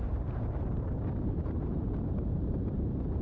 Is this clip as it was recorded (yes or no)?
no